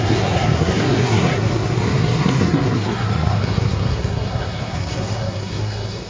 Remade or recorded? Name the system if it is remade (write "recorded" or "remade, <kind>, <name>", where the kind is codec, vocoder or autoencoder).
remade, codec, SNAC